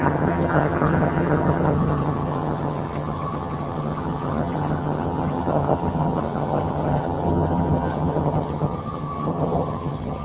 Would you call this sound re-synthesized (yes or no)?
yes